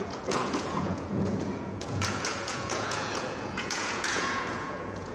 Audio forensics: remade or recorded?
remade